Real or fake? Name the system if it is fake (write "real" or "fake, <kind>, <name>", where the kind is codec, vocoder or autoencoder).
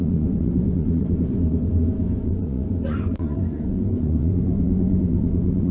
fake, vocoder, Vocos